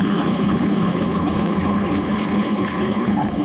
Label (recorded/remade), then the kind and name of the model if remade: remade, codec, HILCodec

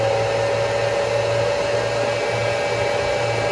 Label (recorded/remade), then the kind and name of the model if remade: recorded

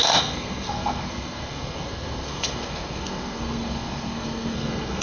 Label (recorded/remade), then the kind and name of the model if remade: remade, codec, SNAC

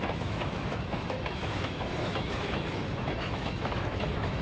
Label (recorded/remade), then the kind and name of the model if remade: remade, autoencoder, DAC-VAE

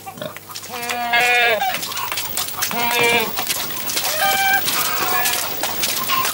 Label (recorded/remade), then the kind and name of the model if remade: recorded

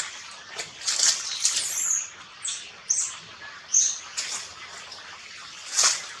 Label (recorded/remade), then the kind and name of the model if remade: remade, vocoder, BigVGAN v2